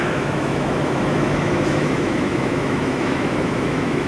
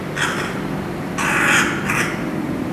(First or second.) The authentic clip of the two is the second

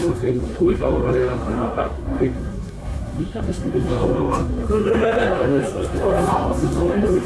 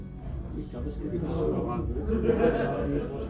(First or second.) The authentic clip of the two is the second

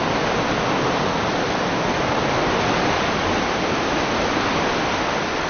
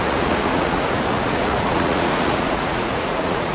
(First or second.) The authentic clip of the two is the first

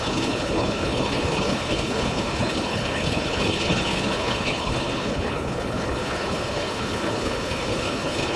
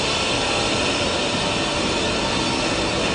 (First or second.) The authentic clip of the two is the second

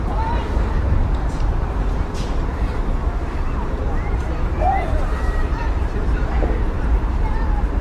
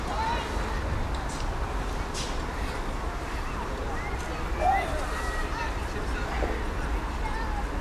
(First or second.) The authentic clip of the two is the second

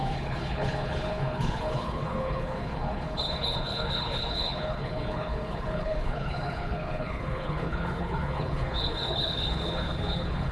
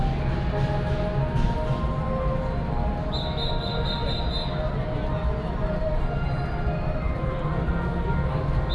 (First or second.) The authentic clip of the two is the second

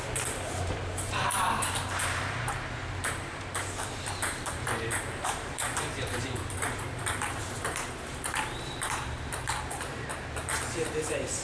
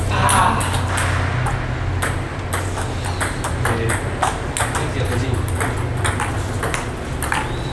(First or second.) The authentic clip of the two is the second